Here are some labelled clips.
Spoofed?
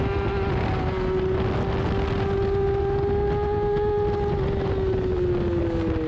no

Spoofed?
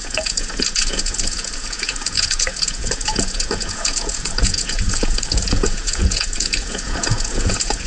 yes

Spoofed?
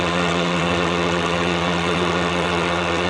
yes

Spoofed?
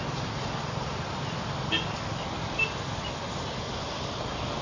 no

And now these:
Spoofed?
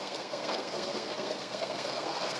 yes